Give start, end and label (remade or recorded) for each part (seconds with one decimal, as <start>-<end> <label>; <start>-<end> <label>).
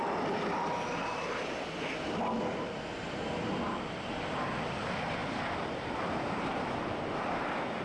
0.0-7.8 recorded